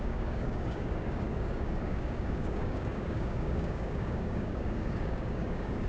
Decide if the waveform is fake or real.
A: fake